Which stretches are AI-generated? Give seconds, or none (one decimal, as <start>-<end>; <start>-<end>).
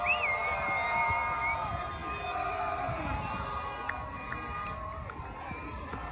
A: none